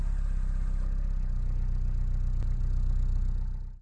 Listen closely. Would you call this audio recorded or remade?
recorded